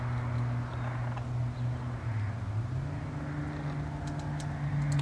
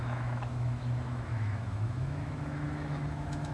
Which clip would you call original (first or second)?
first